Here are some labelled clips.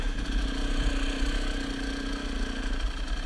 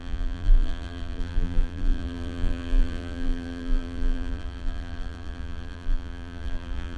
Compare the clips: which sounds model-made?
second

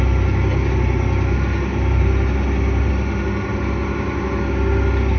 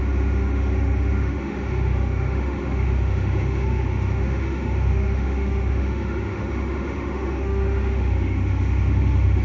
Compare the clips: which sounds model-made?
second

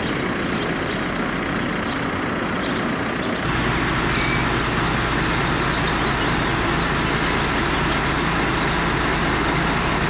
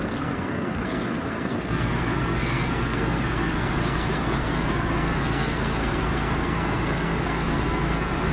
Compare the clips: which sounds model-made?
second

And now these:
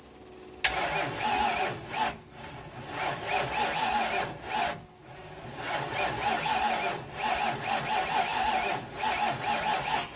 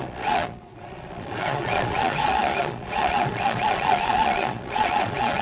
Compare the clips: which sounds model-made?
second